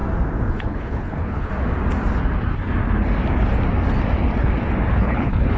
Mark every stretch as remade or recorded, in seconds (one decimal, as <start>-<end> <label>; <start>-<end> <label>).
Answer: 0.0-0.5 recorded; 0.5-1.5 remade; 1.5-4.9 recorded; 4.9-5.6 remade